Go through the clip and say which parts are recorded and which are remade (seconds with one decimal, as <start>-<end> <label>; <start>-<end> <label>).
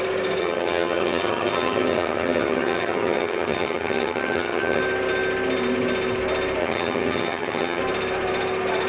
0.0-0.4 recorded; 0.4-4.8 remade; 4.8-6.6 recorded; 6.6-7.8 remade; 7.8-8.9 recorded